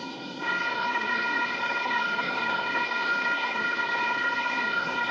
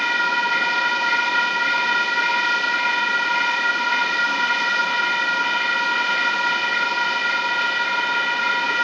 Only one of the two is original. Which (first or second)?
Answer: second